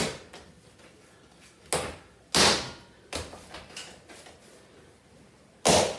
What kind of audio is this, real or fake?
real